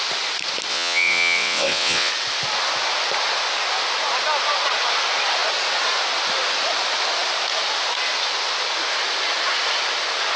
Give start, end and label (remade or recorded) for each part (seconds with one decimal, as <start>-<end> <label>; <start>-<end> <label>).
0.0-0.7 recorded; 0.7-2.1 remade; 2.1-10.4 recorded